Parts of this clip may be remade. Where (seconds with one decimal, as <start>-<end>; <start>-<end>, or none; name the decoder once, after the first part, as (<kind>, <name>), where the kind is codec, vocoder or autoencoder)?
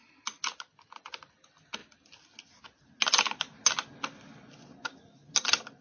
none